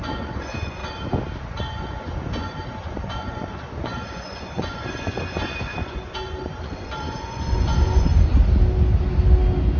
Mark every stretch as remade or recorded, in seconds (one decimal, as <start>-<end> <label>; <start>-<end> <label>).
0.0-0.8 remade; 0.8-1.4 recorded; 1.4-8.1 remade; 8.1-9.8 recorded